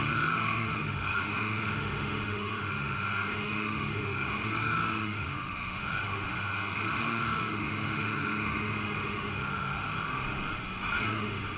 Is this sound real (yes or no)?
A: no